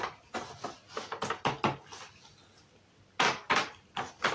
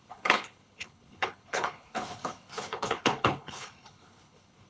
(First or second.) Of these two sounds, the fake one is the second